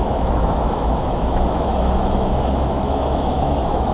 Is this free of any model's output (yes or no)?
no